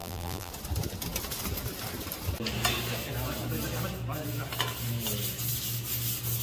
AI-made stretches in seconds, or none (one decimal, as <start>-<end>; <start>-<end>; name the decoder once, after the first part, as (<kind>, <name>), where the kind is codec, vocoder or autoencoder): 0.0-0.5 (vocoder, BigVGAN v2)